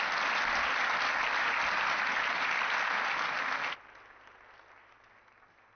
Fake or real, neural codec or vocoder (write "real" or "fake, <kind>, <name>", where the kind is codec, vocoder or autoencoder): real